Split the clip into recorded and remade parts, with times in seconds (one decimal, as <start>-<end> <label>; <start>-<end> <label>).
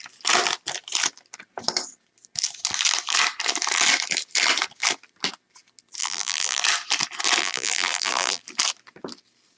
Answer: 0.0-6.0 recorded; 6.0-6.6 remade; 6.6-7.4 recorded; 7.4-8.4 remade; 8.4-9.6 recorded